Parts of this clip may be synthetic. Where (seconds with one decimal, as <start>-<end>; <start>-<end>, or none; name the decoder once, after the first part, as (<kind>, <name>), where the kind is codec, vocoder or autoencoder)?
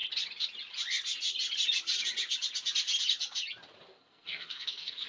3.9-5.1 (codec, SNAC)